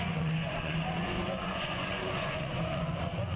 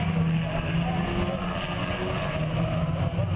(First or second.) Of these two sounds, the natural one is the second